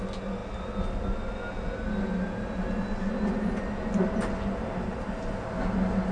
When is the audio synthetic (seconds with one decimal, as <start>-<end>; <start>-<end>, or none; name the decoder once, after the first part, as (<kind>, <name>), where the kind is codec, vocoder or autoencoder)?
none